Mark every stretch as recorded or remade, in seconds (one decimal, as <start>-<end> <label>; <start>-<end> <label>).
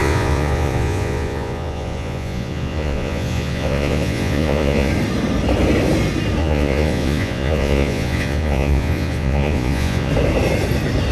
0.0-4.9 remade; 4.9-6.4 recorded; 6.4-10.1 remade; 10.1-11.1 recorded